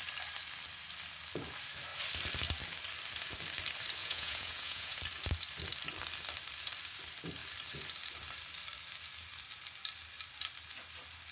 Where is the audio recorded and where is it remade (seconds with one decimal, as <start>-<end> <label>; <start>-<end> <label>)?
0.0-4.0 recorded; 4.0-5.0 remade; 5.0-11.3 recorded